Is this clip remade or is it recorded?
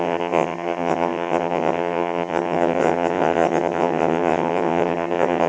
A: remade